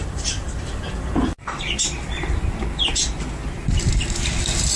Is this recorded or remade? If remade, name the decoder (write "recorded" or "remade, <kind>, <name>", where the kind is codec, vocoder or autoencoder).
recorded